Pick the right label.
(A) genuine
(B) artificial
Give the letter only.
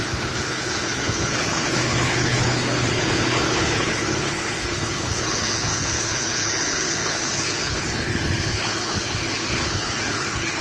B